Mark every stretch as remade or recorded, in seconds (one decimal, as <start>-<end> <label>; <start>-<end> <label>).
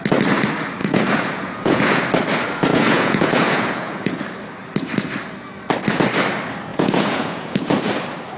0.0-0.8 recorded; 0.8-2.0 remade; 2.0-2.7 recorded; 2.7-4.2 remade; 4.2-6.7 recorded; 6.7-8.0 remade; 8.0-8.4 recorded